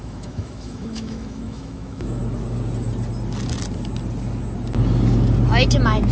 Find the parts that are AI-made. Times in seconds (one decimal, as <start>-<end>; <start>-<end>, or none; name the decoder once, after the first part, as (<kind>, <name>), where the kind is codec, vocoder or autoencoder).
0.0-2.2 (autoencoder, DAC-VAE)